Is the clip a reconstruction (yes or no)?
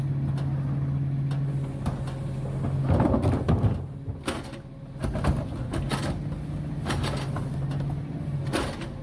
no